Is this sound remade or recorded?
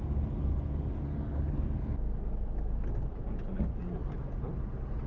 recorded